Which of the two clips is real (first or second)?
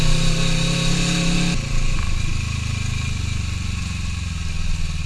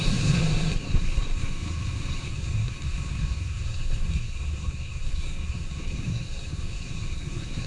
first